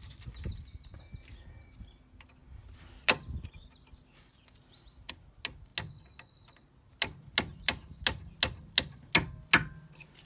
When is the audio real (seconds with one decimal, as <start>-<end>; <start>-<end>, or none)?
0.0-10.3